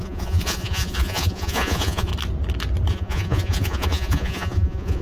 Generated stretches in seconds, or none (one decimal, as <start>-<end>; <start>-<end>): 0.0-2.1; 2.9-5.0